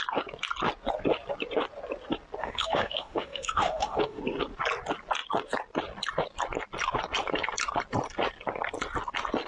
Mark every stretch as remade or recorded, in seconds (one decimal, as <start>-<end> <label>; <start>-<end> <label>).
0.0-2.4 recorded; 2.4-4.2 remade; 4.2-9.5 recorded